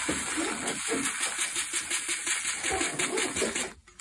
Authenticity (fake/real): real